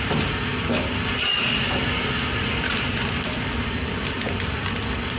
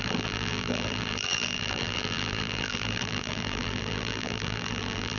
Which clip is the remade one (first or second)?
second